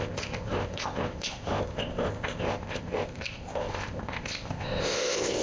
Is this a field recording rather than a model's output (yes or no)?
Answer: no